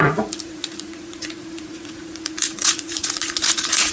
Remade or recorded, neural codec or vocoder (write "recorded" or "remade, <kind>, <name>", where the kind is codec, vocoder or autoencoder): remade, vocoder, Vocos